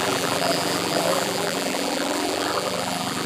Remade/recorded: remade